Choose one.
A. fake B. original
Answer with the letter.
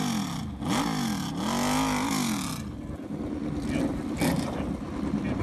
B